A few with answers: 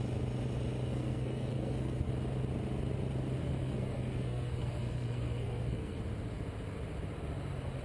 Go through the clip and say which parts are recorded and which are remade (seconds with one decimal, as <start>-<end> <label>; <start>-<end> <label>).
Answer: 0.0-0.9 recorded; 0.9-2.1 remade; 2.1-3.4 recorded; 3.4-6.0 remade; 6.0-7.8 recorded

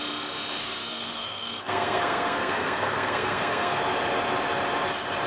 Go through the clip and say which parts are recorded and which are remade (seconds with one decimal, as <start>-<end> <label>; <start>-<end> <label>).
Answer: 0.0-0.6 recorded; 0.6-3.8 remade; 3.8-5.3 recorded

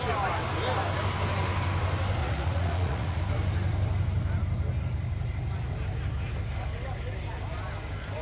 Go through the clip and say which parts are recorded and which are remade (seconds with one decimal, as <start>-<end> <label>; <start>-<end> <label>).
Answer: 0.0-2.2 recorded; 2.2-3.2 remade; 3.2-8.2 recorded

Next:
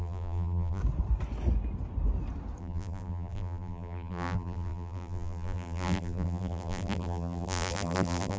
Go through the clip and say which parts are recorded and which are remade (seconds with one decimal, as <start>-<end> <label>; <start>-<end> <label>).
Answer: 0.0-0.8 remade; 0.8-2.6 recorded; 2.6-8.4 remade